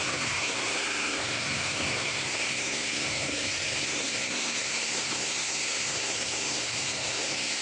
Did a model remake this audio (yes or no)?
yes